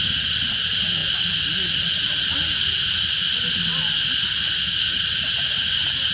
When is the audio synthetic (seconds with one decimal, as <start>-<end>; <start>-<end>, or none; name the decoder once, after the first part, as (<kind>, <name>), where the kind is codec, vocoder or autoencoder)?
1.0-3.8 (vocoder, BigVGAN v2)